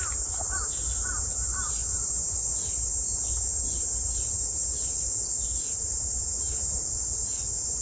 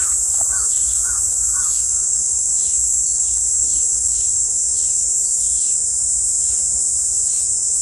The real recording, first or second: first